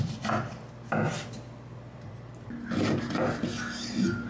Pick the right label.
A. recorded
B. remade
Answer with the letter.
A